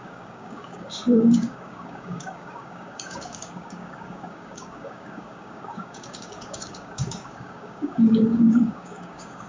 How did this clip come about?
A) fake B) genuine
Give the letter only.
A